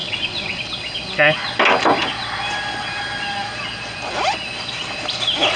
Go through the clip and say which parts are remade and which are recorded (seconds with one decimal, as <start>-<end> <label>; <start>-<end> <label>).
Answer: 0.0-0.6 remade; 0.6-5.6 recorded